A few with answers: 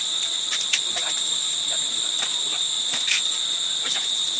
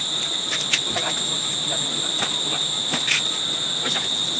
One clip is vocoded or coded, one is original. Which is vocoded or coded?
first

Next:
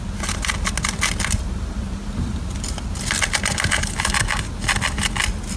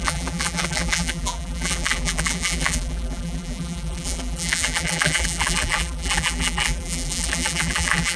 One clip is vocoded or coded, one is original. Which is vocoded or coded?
second